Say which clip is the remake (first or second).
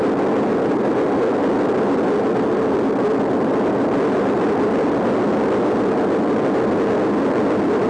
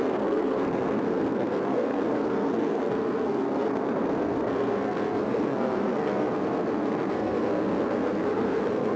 second